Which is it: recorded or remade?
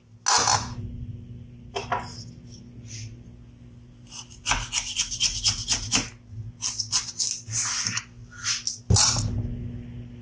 recorded